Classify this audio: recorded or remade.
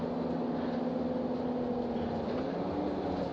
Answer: recorded